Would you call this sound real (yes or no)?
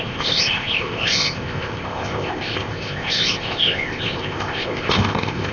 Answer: no